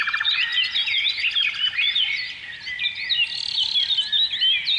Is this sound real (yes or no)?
yes